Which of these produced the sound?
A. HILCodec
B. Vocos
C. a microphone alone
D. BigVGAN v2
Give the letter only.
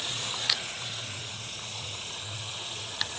B